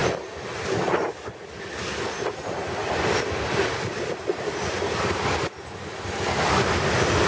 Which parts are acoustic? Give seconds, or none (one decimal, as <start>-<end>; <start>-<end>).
0.0-7.3

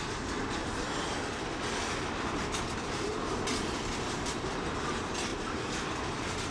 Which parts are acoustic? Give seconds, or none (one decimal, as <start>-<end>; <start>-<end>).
0.0-0.6; 4.5-5.3; 5.9-6.5

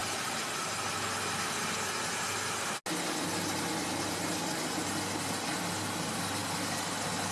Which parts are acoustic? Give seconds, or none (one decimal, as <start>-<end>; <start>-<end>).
0.0-7.3